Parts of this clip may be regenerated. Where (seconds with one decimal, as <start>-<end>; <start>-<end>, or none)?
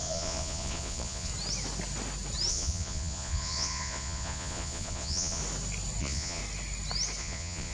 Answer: 0.0-1.3; 2.5-5.4; 6.0-6.4; 7.2-7.7